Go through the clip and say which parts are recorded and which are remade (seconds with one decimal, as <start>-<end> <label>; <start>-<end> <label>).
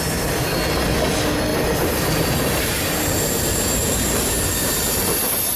0.0-1.5 recorded; 1.5-4.9 remade; 4.9-5.6 recorded